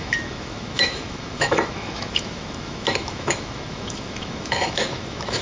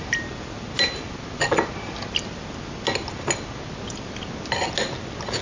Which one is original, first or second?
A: second